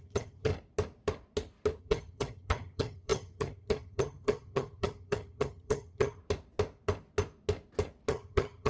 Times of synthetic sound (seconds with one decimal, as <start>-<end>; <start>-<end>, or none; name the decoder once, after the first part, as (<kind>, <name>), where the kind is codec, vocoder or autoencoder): 0.0-0.5 (vocoder, HiFi-GAN); 1.8-6.2; 8.1-8.7